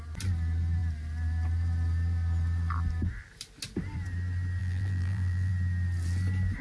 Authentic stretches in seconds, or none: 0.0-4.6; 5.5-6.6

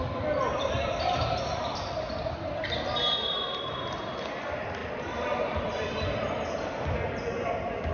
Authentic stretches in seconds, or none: 0.0-7.9

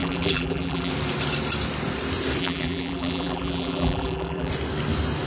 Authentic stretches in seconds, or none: 0.9-2.4; 4.5-5.3

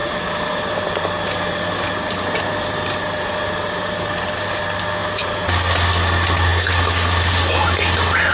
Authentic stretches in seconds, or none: 4.6-5.0; 5.5-8.3